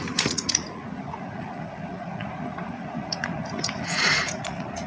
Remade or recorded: remade